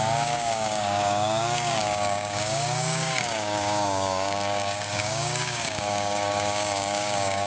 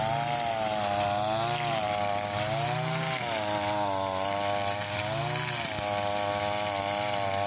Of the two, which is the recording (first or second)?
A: second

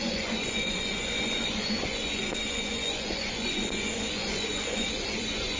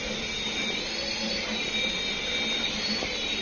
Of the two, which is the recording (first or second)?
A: second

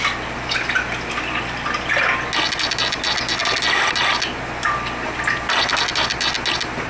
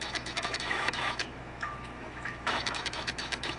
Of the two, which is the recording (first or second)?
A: first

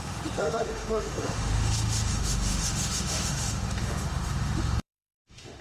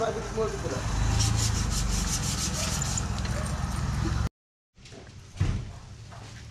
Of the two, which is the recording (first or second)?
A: second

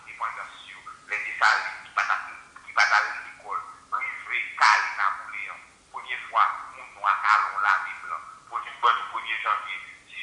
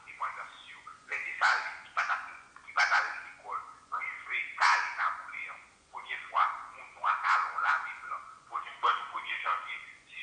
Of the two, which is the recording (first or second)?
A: first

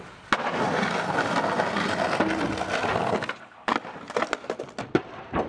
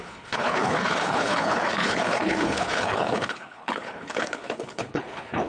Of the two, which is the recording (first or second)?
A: first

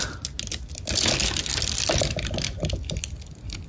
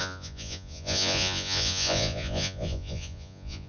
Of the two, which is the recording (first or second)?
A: first